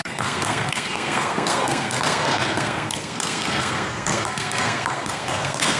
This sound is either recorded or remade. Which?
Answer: remade